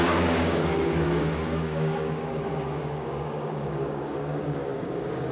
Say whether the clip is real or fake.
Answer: fake